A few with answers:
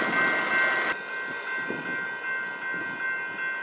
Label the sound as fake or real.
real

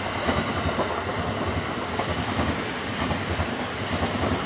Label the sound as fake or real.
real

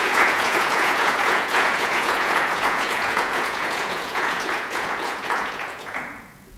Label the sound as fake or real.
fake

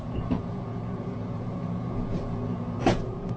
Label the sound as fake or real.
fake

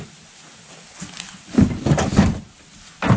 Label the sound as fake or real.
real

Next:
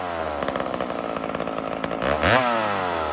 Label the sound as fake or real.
real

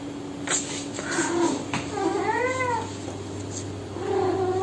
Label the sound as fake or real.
real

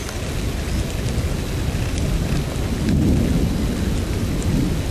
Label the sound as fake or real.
real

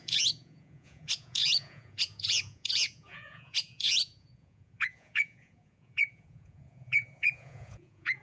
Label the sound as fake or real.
fake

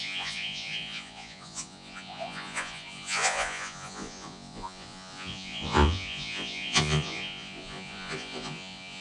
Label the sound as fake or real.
fake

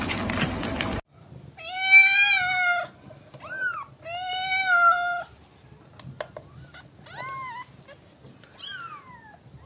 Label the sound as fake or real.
real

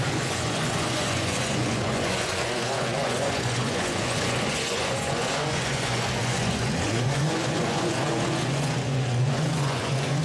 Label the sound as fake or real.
fake